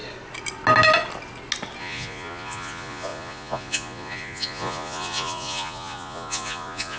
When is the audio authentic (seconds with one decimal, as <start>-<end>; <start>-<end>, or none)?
0.0-1.8